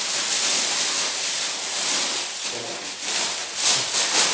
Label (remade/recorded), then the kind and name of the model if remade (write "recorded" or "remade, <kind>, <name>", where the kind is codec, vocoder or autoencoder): recorded